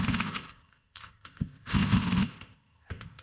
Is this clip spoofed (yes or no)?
yes